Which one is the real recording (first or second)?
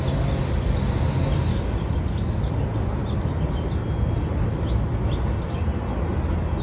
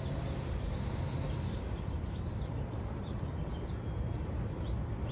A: first